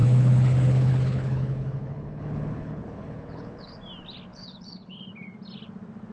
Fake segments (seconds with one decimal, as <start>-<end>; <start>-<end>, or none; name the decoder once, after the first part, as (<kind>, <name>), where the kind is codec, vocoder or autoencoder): 0.0-3.7 (codec, HILCodec); 4.3-5.0

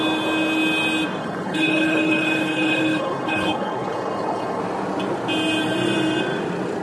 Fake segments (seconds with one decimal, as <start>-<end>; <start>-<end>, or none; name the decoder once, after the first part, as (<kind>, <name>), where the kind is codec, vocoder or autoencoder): 1.2-4.6 (codec, HILCodec)

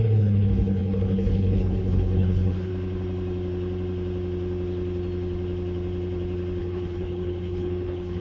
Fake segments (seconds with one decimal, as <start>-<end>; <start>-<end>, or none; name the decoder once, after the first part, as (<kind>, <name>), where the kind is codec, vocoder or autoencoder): 0.0-2.7 (codec, HILCodec); 6.6-8.2

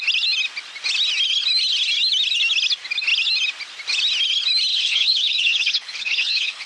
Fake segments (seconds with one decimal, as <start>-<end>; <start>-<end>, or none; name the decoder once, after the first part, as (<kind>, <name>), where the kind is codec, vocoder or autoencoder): 4.7-6.7 (codec, HILCodec)

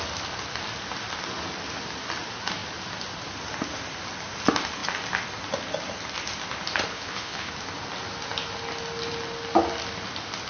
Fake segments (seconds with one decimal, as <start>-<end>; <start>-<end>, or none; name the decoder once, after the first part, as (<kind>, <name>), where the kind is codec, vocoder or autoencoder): 6.9-7.5 (codec, HILCodec)

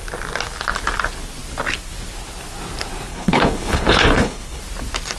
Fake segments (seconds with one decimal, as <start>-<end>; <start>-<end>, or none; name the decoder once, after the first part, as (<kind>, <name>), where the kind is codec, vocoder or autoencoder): 3.1-4.6 (codec, HILCodec)

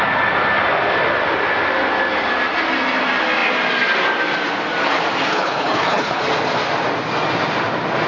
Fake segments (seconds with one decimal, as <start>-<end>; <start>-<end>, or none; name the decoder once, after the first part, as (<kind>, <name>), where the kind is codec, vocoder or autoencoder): 5.3-6.2 (codec, HILCodec)